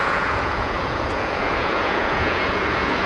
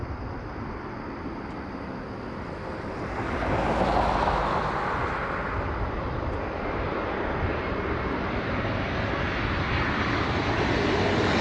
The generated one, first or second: first